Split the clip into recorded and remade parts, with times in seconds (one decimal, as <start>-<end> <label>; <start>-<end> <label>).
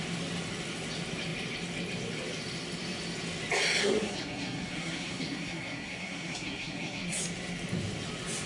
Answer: 0.0-3.8 recorded; 3.8-7.2 remade; 7.2-8.5 recorded